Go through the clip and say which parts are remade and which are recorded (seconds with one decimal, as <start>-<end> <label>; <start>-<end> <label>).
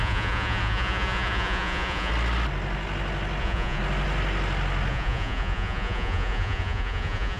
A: 0.0-2.1 remade; 2.1-3.4 recorded; 3.4-3.8 remade; 3.8-4.9 recorded; 4.9-7.4 remade